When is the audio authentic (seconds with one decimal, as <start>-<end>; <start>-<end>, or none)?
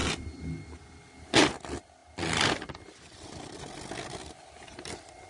0.0-5.3